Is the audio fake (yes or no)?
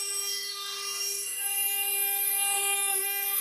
yes